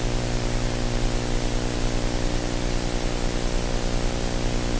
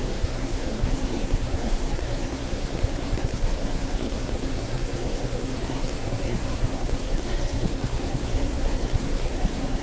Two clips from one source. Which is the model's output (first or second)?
second